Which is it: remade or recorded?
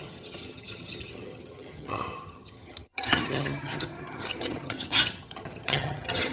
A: remade